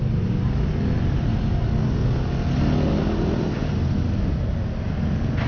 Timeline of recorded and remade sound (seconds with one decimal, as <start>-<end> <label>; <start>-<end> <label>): 0.0-5.5 recorded